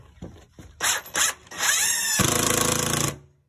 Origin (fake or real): real